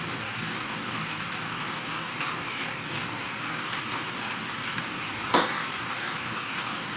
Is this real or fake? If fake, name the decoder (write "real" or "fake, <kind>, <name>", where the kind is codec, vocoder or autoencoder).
fake, codec, DAC